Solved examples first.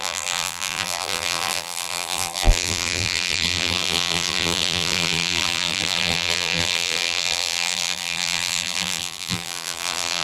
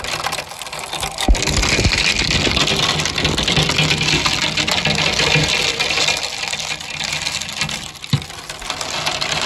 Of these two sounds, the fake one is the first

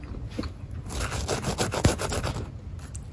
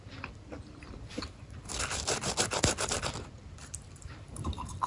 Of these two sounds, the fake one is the second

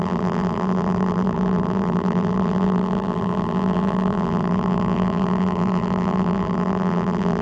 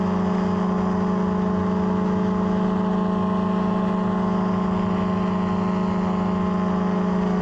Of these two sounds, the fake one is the first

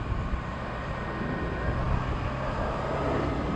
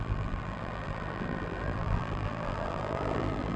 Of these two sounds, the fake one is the second